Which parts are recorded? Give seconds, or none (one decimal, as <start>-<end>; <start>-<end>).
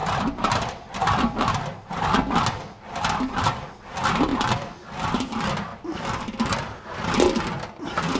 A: 1.9-4.3; 4.8-5.7; 6.8-8.2